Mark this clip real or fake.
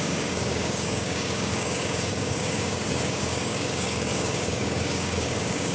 fake